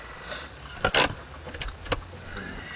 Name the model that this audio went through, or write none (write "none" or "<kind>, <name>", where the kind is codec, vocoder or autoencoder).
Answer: none